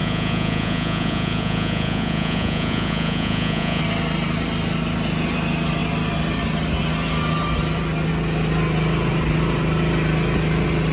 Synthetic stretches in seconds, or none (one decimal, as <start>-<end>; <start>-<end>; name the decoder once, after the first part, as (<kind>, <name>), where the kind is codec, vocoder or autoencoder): 0.0-3.8 (vocoder, Vocos)